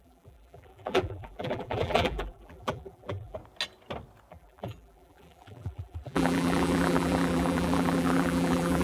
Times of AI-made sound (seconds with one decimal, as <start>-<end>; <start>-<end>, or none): 0.0-3.4; 4.3-8.8